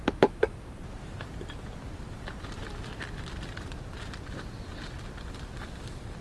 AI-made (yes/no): no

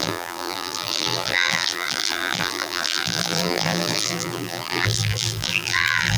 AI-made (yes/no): yes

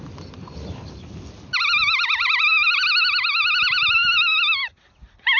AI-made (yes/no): yes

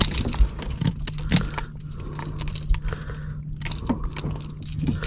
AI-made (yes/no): no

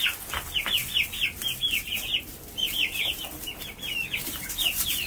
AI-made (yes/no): no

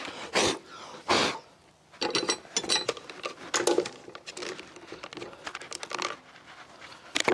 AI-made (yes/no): no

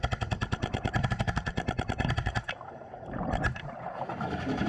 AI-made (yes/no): yes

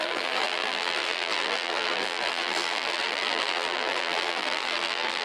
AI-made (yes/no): yes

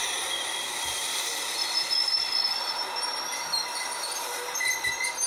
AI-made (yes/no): yes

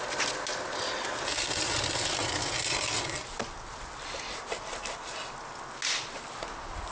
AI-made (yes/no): no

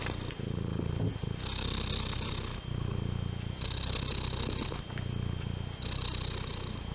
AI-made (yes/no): no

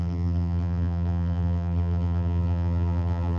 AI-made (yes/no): yes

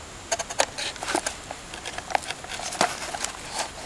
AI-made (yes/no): no